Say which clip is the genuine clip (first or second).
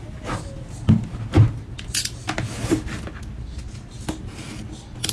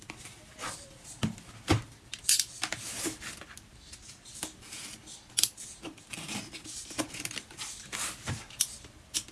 first